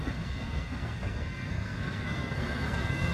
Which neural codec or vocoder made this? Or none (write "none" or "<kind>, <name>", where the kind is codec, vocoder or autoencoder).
codec, SNAC